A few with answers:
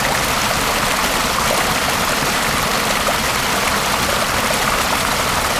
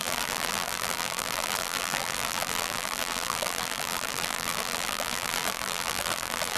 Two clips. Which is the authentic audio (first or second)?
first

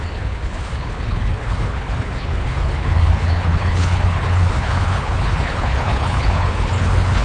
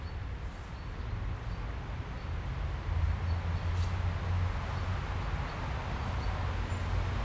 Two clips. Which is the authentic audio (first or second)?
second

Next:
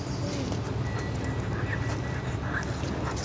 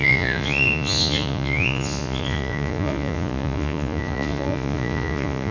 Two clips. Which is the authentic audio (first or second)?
first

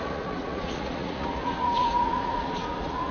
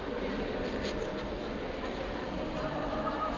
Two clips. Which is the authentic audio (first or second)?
second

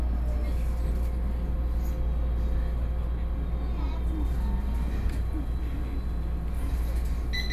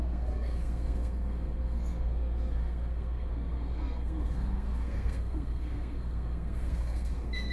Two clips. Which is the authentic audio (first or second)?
first